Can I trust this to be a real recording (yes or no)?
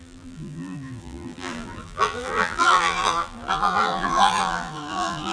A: no